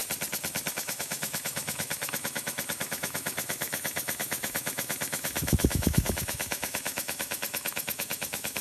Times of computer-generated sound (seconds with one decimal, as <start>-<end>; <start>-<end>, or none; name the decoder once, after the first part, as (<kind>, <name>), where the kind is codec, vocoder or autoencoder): 0.7-8.6 (autoencoder, DAC-VAE)